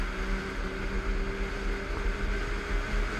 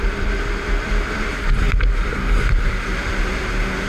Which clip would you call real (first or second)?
first